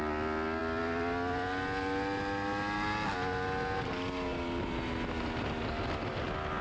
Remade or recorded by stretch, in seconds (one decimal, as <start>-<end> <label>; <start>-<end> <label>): 0.0-6.6 recorded